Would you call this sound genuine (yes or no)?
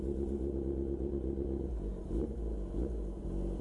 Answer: yes